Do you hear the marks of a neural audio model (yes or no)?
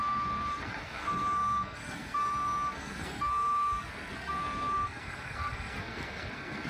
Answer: yes